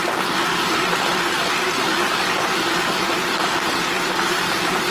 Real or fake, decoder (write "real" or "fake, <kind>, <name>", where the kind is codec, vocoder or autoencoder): real